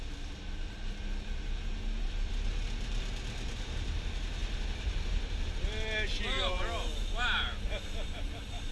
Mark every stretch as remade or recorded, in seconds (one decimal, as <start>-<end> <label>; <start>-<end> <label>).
0.0-8.7 recorded

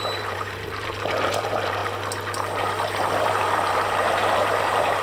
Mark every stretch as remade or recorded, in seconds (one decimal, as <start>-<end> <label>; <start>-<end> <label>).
0.0-1.8 remade; 1.8-3.2 recorded; 3.2-5.0 remade

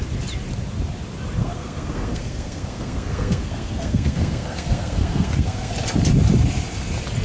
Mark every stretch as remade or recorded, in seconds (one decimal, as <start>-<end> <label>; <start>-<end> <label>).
0.0-1.4 recorded; 1.4-5.7 remade; 5.7-7.2 recorded

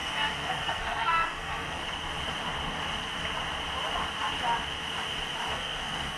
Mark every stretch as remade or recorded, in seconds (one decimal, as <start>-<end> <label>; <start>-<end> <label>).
0.0-1.8 remade; 1.8-5.5 recorded; 5.5-6.2 remade

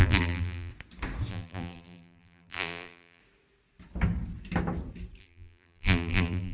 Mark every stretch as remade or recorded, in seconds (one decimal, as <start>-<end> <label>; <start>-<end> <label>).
0.0-0.7 remade; 0.7-1.3 recorded; 1.3-3.2 remade; 3.2-5.2 recorded; 5.2-6.5 remade

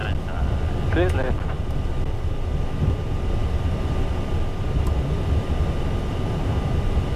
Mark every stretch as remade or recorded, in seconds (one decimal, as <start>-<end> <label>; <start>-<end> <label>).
0.0-7.2 recorded

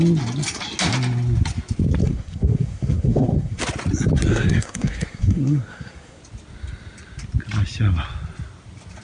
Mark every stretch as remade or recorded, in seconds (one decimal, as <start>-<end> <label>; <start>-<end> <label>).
0.0-2.0 recorded; 2.0-3.6 remade; 3.6-4.3 recorded; 4.3-6.2 remade; 6.2-9.0 recorded

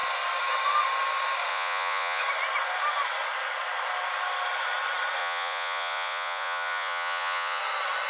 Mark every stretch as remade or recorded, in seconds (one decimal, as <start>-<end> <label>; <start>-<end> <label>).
0.0-1.5 recorded; 1.5-2.2 remade; 2.2-5.2 recorded; 5.2-7.6 remade; 7.6-8.1 recorded